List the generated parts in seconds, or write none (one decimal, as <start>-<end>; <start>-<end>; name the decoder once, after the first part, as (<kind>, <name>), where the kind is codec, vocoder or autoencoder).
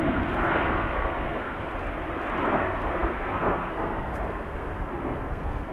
0.0-1.7 (codec, SNAC); 2.5-5.7